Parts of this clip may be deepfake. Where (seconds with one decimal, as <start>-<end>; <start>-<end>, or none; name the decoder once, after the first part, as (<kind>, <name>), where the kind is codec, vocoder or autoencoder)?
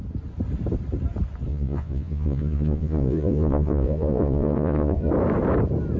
1.5-5.1 (vocoder, Vocos)